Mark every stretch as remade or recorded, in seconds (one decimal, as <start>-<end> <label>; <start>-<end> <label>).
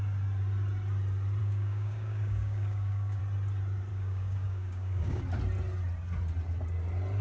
0.0-1.4 recorded; 1.4-3.2 remade; 3.2-3.9 recorded; 3.9-5.2 remade; 5.2-7.2 recorded